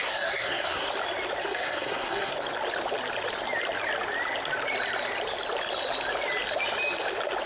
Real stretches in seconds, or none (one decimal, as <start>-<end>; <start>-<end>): 0.9-1.4; 2.3-7.5